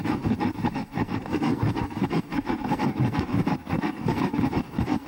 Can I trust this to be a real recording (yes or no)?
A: no